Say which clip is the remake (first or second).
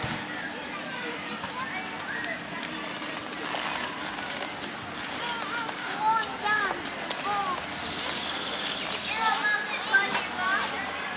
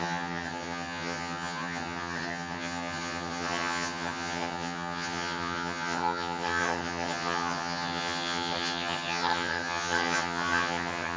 second